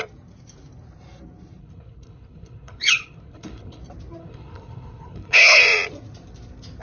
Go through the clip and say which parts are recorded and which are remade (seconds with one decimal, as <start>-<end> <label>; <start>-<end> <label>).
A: 0.0-1.6 recorded; 1.6-3.8 remade; 3.8-4.2 recorded; 4.2-5.6 remade; 5.6-6.8 recorded